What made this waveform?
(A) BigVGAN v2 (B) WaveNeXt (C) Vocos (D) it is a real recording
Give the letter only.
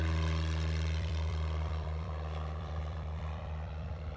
A